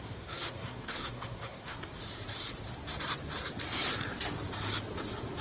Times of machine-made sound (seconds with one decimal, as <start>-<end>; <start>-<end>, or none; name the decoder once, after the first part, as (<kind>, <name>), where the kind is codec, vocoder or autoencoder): 0.0-2.0 (codec, SNAC)